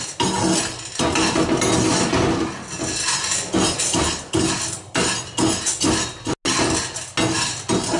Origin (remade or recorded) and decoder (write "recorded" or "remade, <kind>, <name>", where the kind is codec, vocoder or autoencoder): recorded